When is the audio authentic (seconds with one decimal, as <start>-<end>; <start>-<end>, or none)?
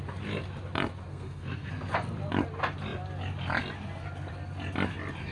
0.0-1.1; 1.7-5.3